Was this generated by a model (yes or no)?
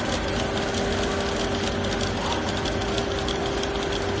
no